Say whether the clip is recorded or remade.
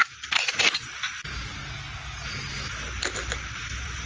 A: recorded